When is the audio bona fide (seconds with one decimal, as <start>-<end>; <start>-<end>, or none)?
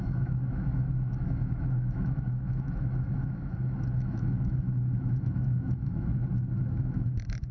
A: 6.1-6.6